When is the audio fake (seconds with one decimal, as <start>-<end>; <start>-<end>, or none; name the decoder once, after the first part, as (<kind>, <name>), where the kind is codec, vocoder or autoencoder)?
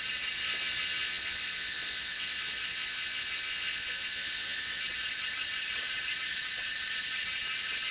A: 0.4-4.8 (vocoder, Vocos)